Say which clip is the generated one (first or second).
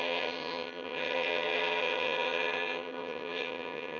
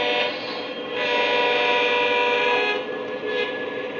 first